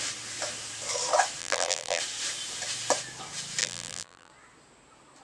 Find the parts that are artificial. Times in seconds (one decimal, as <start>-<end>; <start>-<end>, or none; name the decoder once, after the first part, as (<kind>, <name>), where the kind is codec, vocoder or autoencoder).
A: 1.4-2.0 (vocoder, BigVGAN v2); 3.6-4.3